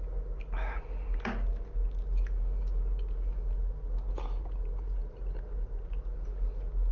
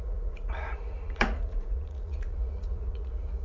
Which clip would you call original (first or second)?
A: first